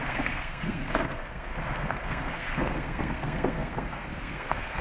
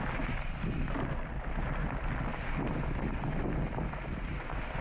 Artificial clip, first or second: first